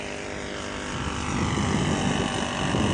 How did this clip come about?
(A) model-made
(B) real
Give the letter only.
B